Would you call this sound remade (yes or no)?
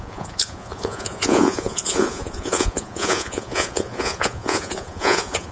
yes